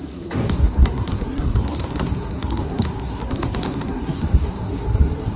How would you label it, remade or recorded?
remade